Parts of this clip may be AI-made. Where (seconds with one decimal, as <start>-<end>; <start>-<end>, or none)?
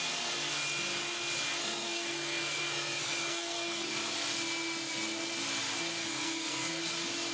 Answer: 1.6-3.9; 6.0-6.8